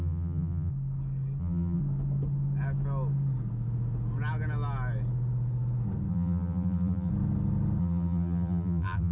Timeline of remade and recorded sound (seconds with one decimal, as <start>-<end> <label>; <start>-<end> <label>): 0.0-0.7 remade; 0.7-1.4 recorded; 1.4-1.8 remade; 1.8-6.1 recorded; 6.1-7.1 remade; 7.1-7.8 recorded; 7.8-9.1 remade